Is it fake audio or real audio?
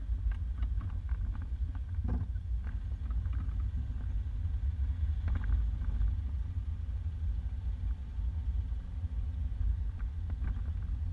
real